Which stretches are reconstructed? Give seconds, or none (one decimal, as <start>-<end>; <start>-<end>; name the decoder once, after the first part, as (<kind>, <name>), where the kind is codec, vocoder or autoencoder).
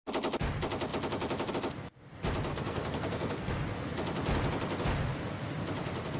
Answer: 2.5-3.5 (codec, SNAC)